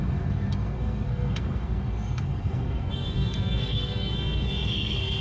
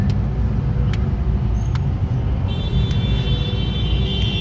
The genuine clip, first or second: second